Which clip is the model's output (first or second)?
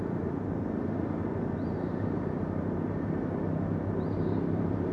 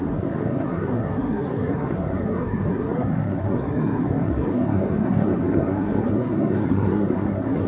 second